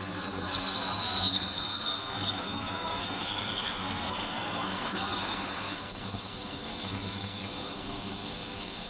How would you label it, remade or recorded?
remade